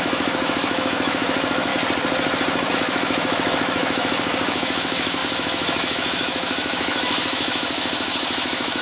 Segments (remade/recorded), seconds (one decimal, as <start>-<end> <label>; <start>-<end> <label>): 0.0-1.7 remade; 1.7-2.7 recorded; 2.7-8.8 remade